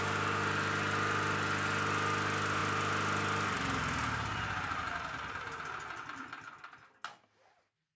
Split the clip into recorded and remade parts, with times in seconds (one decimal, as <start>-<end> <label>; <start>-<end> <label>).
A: 0.0-8.0 recorded